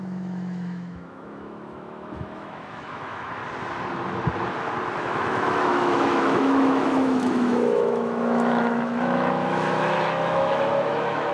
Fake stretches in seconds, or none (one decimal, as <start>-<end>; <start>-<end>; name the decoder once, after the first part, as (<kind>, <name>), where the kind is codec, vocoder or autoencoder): 0.0-3.4 (autoencoder, DAC-VAE); 5.0-11.3